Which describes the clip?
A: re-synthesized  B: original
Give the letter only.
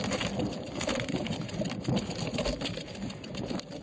B